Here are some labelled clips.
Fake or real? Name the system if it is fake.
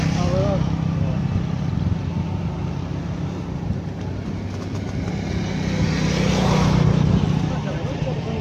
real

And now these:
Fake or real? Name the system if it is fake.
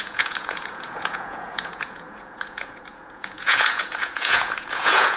fake, vocoder, Vocos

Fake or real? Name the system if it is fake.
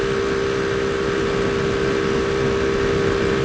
real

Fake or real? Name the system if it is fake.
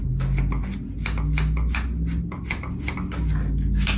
real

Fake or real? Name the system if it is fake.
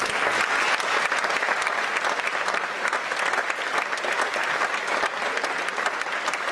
real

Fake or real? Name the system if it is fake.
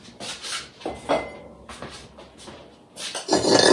real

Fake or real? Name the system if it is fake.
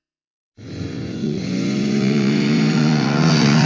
fake, vocoder, Vocos